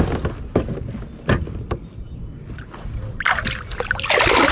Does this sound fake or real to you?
real